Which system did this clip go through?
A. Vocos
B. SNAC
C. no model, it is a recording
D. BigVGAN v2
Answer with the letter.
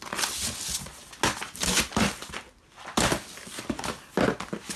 C